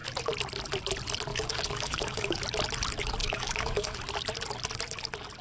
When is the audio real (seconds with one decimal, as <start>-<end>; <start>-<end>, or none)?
0.0-1.3; 2.4-3.2; 4.0-5.4